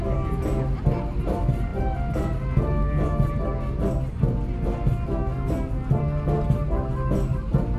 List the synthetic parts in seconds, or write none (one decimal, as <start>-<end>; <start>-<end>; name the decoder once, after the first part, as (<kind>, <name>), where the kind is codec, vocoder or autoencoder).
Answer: none